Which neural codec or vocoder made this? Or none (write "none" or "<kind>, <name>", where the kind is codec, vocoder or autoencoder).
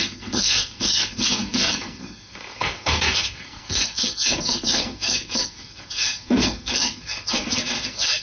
codec, SNAC